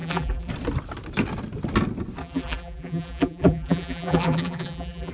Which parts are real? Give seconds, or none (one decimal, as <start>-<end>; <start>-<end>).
0.5-2.2